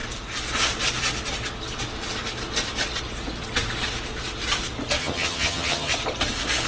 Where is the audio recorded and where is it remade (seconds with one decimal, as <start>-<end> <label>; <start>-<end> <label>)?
0.0-5.0 recorded; 5.0-5.9 remade; 5.9-6.7 recorded